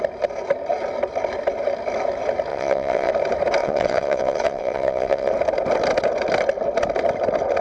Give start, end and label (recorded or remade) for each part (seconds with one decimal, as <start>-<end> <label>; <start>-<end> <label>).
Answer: 0.0-2.5 recorded; 2.5-3.1 remade; 3.1-3.6 recorded; 3.6-5.3 remade; 5.3-7.6 recorded